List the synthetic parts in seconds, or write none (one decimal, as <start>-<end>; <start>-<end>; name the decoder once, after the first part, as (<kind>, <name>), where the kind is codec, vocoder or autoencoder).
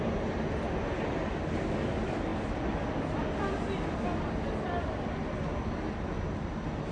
none